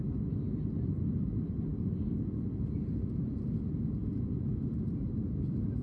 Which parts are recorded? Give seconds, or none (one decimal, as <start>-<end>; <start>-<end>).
0.0-5.8